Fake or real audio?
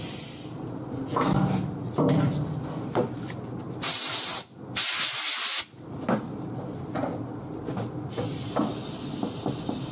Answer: fake